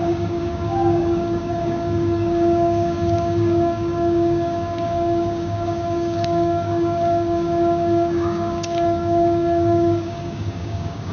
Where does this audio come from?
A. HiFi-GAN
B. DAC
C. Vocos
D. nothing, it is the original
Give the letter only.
B